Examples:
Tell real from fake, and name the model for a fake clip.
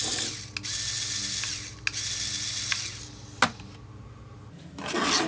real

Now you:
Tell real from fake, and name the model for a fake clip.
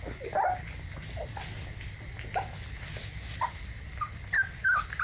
real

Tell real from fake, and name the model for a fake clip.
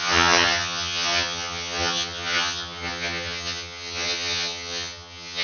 fake, vocoder, HiFi-GAN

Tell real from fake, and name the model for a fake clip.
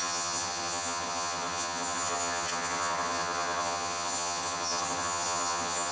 fake, vocoder, HiFi-GAN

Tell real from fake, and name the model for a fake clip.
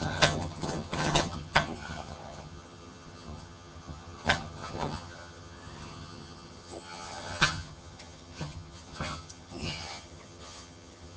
fake, vocoder, HiFi-GAN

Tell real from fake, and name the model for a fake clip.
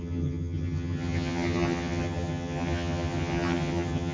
fake, vocoder, HiFi-GAN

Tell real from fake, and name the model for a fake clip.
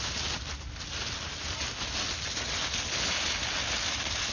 real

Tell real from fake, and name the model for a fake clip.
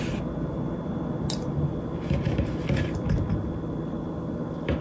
real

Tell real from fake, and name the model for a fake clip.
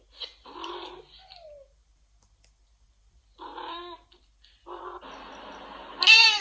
real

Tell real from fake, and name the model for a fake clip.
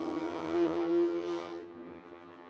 fake, vocoder, HiFi-GAN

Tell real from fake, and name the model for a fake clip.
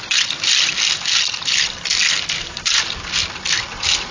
real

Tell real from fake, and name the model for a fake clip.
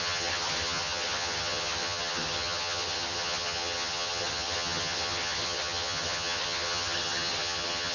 fake, vocoder, HiFi-GAN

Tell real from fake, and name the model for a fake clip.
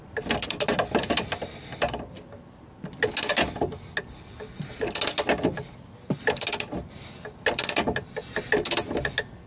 real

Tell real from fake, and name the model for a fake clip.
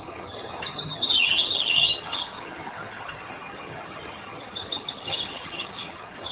fake, vocoder, HiFi-GAN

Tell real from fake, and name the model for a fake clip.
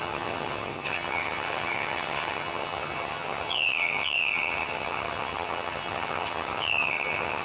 fake, vocoder, HiFi-GAN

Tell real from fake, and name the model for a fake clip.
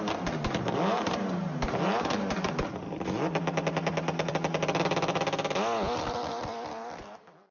real